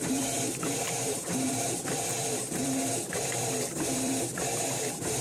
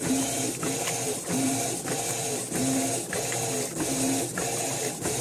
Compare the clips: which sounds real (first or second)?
second